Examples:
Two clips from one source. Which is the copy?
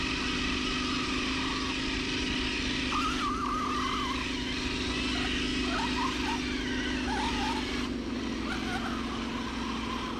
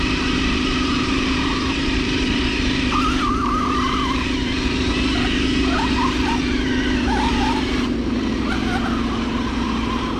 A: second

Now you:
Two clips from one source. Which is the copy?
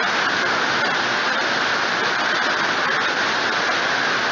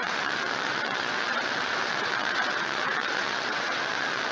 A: second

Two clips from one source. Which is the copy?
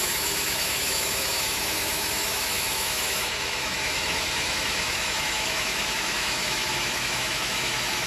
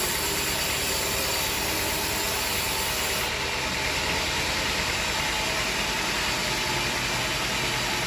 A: first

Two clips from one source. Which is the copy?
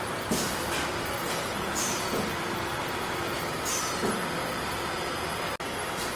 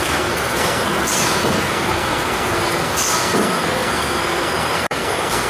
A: second